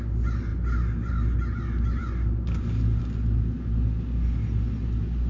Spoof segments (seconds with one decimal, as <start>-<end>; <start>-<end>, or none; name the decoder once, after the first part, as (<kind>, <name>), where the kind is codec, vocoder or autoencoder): none